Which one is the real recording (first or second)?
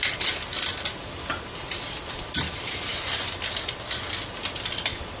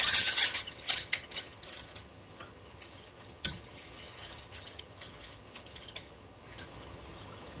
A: first